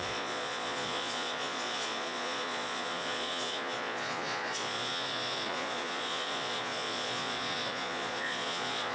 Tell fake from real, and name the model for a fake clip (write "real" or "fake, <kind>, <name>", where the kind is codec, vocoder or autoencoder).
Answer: fake, vocoder, Vocos